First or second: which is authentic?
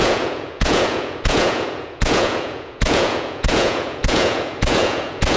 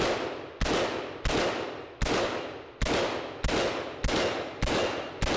second